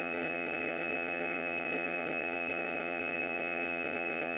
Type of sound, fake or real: fake